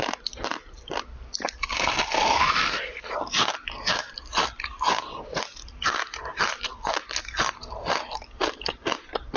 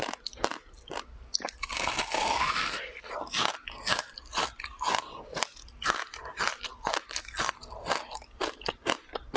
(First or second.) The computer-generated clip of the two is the first